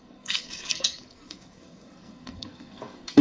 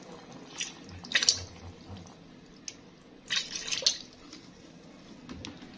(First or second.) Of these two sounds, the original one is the second